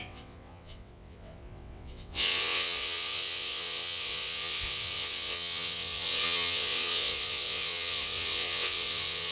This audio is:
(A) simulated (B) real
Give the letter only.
A